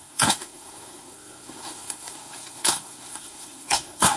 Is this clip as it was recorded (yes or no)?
no